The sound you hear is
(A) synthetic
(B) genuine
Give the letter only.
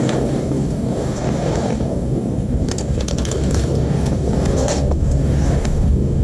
A